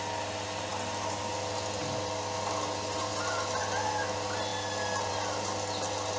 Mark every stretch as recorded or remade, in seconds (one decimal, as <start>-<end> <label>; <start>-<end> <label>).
0.0-6.2 recorded